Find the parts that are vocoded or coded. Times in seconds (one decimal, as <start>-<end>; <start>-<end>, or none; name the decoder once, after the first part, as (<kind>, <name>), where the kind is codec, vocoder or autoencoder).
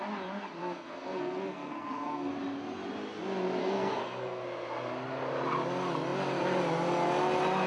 0.6-2.3 (codec, SNAC); 3.6-4.4